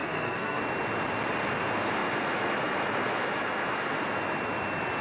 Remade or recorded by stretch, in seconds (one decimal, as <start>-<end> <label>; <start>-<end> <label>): 0.0-0.6 remade; 0.6-5.0 recorded

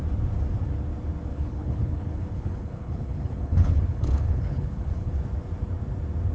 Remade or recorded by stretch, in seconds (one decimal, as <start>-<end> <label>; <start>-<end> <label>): 0.0-1.3 recorded; 1.3-5.1 remade; 5.1-6.3 recorded

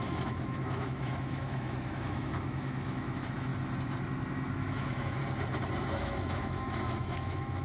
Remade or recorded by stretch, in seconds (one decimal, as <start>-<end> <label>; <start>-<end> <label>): 0.0-3.5 remade; 3.5-4.5 recorded; 4.5-5.2 remade; 5.2-5.9 recorded; 5.9-7.6 remade

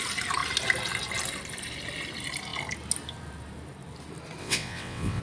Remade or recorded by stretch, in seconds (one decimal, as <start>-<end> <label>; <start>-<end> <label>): 0.0-4.4 recorded; 4.4-5.2 remade

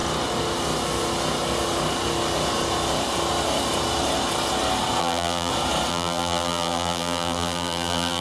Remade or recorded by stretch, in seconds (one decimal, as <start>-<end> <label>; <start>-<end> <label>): 0.0-5.0 recorded; 5.0-5.5 remade; 5.5-5.9 recorded; 5.9-8.2 remade

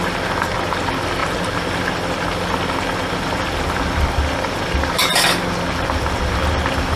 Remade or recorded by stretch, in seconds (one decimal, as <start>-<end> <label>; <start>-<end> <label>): 0.0-7.0 recorded

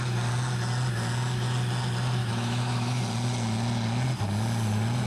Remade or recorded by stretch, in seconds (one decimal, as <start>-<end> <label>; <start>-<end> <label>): 0.0-2.2 recorded; 2.2-3.0 remade; 3.0-5.1 recorded

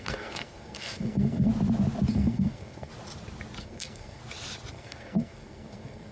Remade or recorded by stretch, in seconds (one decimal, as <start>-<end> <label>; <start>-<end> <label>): 0.0-1.5 remade; 1.5-2.1 recorded; 2.1-2.9 remade; 2.9-3.6 recorded; 3.6-4.2 remade; 4.2-4.7 recorded; 4.7-6.1 remade